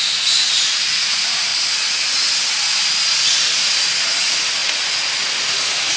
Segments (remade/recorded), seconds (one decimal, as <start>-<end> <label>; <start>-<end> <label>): 0.0-1.5 remade; 1.5-3.5 recorded; 3.5-4.6 remade; 4.6-5.5 recorded; 5.5-6.0 remade